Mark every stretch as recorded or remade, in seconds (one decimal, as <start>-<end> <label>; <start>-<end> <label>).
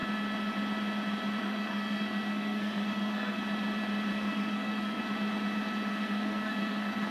0.0-1.4 recorded; 1.4-3.4 remade; 3.4-4.1 recorded; 4.1-5.0 remade; 5.0-5.9 recorded; 5.9-7.1 remade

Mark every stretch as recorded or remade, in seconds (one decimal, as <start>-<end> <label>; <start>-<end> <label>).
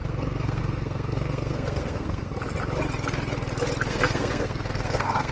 0.0-2.3 remade; 2.3-3.9 recorded; 3.9-5.3 remade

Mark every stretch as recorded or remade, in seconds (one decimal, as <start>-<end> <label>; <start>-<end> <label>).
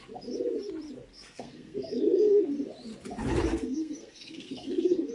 0.0-1.1 recorded; 1.1-2.4 remade; 2.4-3.5 recorded; 3.5-5.1 remade